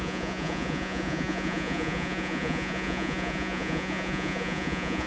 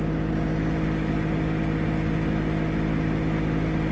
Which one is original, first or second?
second